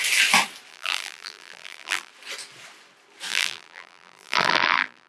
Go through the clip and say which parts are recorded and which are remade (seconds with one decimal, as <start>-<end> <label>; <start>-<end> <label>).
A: 0.0-0.7 recorded; 0.7-2.1 remade; 2.1-3.3 recorded; 3.3-5.1 remade

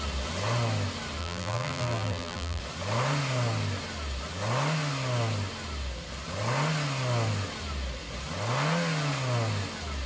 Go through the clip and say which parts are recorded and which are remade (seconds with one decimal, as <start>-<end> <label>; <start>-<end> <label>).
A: 0.0-1.2 recorded; 1.2-2.6 remade; 2.6-10.1 recorded

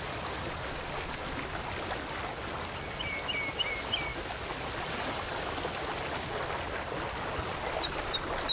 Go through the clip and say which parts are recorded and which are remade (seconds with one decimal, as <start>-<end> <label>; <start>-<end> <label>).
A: 0.0-8.5 recorded